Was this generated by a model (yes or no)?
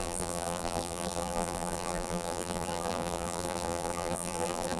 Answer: yes